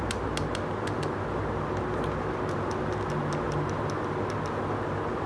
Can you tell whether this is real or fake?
real